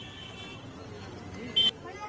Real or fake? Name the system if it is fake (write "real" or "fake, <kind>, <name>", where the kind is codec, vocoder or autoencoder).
real